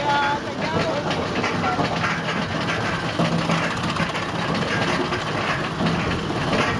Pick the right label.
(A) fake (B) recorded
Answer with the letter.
B